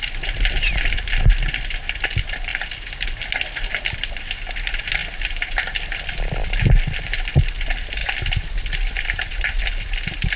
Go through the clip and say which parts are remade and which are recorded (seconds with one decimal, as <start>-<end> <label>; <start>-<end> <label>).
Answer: 0.0-10.4 recorded